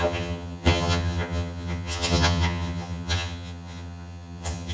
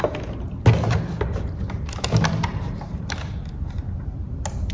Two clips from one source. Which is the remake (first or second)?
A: first